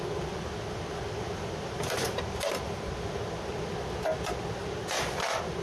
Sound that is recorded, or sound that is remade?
recorded